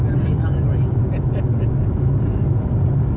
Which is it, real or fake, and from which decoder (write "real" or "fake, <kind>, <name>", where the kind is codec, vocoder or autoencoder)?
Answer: real